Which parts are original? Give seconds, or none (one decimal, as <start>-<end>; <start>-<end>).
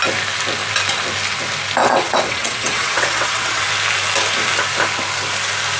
0.0-1.8; 3.6-5.8